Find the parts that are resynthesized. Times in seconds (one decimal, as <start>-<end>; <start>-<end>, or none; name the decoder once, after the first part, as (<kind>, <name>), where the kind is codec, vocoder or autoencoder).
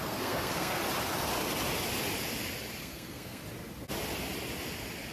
0.0-0.8 (codec, SNAC); 2.8-3.4